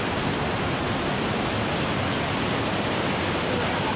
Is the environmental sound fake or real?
real